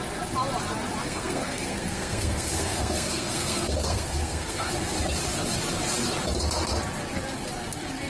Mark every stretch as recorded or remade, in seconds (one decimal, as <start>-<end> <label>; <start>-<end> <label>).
0.0-1.0 recorded; 1.0-4.7 remade; 4.7-8.1 recorded